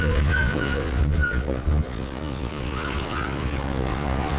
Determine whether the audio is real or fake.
fake